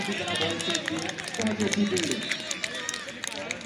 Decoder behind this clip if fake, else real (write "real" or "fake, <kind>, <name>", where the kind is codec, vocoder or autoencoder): real